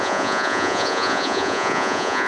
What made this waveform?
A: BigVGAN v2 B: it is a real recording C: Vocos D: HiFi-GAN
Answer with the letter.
C